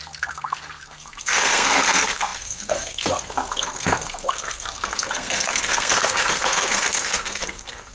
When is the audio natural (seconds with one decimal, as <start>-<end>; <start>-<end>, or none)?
none